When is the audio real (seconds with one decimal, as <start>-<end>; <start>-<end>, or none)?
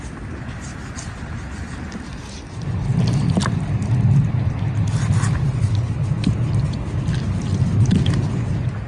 0.0-8.9